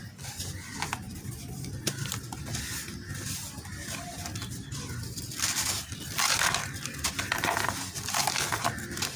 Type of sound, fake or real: real